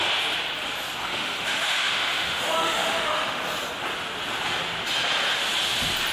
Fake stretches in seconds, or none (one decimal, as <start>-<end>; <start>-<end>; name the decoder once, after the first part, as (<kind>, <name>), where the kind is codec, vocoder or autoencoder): 1.0-3.4 (autoencoder, DAC-VAE)